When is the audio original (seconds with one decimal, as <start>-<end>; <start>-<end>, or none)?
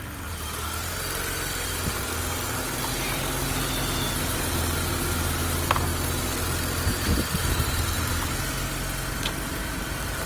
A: 0.0-10.3